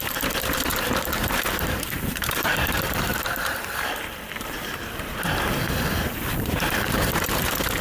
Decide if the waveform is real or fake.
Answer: fake